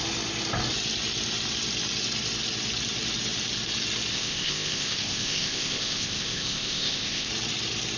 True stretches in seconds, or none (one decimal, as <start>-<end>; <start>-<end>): 0.0-4.1; 7.3-8.0